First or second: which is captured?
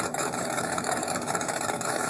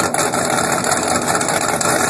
second